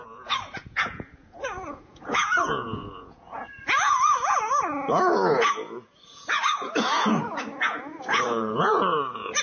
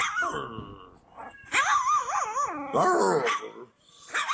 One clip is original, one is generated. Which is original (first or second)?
second